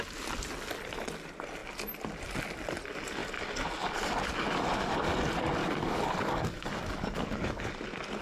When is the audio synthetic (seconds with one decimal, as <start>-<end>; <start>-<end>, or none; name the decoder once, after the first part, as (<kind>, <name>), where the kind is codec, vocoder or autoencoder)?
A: 5.6-7.7 (codec, DAC)